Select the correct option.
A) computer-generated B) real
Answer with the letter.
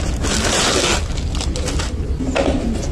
B